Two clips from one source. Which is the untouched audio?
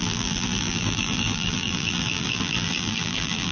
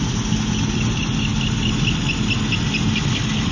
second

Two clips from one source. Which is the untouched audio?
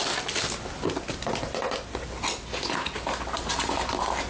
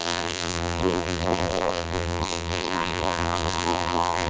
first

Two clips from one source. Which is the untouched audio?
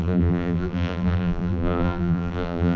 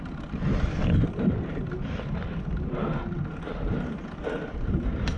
second